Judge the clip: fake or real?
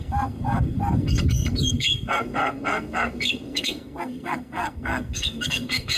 fake